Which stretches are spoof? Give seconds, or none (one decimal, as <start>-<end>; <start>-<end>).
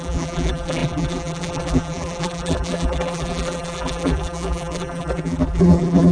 0.0-6.1